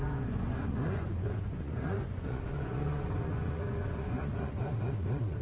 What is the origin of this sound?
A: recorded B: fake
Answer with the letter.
B